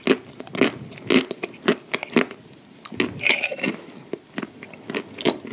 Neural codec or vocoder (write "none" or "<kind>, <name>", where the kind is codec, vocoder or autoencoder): none